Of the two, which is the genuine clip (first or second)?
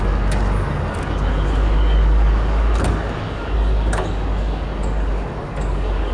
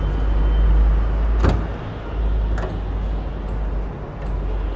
second